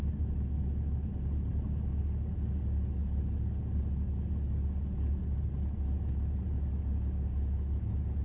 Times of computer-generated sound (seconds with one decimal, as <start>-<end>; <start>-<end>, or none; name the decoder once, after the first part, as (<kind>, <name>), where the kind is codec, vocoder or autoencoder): none